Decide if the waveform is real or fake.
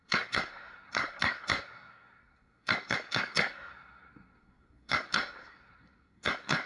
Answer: fake